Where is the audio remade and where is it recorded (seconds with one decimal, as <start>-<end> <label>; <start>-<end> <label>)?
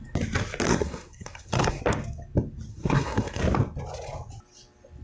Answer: 0.0-0.7 recorded; 0.7-1.8 remade; 1.8-2.7 recorded; 2.7-3.4 remade; 3.4-5.0 recorded